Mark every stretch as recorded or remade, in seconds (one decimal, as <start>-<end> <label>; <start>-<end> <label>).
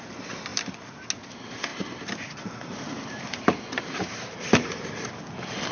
0.0-0.5 recorded; 0.5-1.0 remade; 1.0-1.7 recorded; 1.7-5.1 remade; 5.1-5.7 recorded